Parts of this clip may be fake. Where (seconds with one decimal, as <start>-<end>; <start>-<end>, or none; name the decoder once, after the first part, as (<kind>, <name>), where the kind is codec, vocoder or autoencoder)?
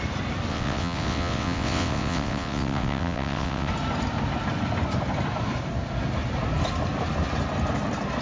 0.5-3.7 (vocoder, WaveNeXt)